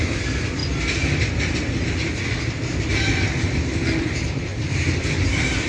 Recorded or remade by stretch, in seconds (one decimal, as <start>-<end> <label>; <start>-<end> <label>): 0.0-0.6 remade; 0.6-4.0 recorded; 4.0-5.7 remade